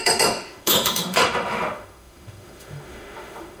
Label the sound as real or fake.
fake